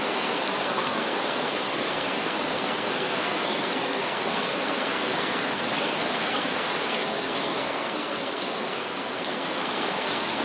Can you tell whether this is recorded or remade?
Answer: remade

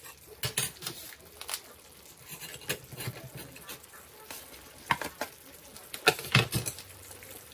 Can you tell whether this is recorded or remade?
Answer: recorded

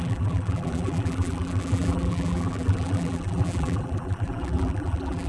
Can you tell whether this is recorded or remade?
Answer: remade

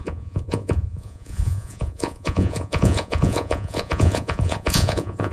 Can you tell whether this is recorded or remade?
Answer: remade